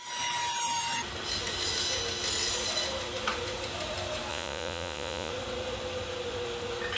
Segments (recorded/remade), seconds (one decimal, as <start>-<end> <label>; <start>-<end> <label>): 0.0-4.3 recorded; 4.3-5.3 remade; 5.3-7.0 recorded

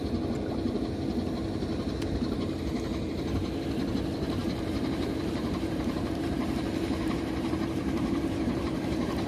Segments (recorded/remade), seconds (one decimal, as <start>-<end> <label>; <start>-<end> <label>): 0.0-1.7 recorded; 1.7-3.1 remade; 3.1-4.4 recorded; 4.4-9.3 remade

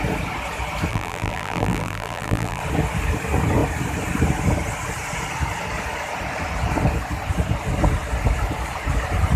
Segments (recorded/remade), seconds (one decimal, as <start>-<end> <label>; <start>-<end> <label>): 0.0-0.9 recorded; 0.9-2.6 remade; 2.6-9.4 recorded

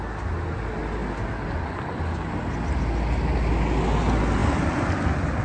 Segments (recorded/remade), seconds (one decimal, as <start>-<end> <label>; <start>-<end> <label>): 0.0-5.4 recorded

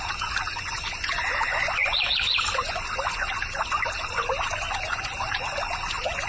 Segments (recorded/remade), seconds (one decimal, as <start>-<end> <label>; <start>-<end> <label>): 0.0-6.3 remade